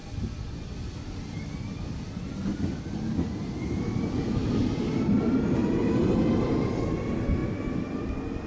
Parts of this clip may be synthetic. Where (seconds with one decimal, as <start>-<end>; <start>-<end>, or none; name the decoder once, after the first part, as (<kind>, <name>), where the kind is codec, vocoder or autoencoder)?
none